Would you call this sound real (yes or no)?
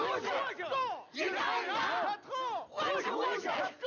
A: yes